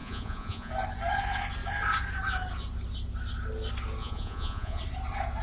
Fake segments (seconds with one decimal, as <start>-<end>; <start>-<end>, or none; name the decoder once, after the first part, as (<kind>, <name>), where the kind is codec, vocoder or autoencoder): 0.0-0.7 (vocoder, Vocos); 4.0-4.8